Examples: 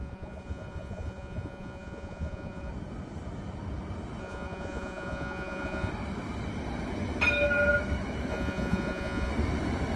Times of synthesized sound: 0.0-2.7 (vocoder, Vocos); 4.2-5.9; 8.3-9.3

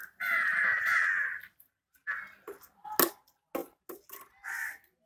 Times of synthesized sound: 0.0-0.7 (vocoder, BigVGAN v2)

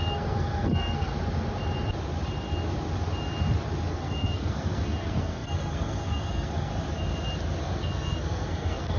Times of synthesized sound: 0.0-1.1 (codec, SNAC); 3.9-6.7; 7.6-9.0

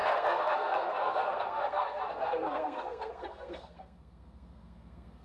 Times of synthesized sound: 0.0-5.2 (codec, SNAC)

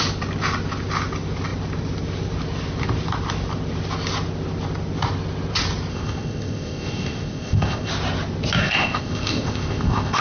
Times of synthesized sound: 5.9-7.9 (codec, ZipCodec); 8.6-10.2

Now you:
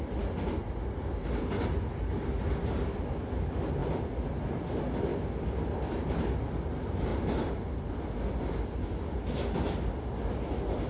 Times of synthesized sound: none

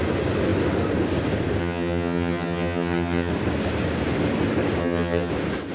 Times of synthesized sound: 1.6-3.3 (vocoder, HiFi-GAN); 4.8-5.3

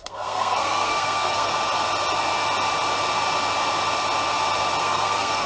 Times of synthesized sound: 0.0-1.5 (codec, SNAC); 4.8-5.5